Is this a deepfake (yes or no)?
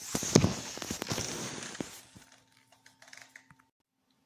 no